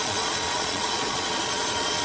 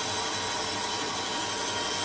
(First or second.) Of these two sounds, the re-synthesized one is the first